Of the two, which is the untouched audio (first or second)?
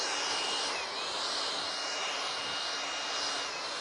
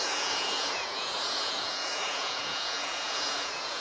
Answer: first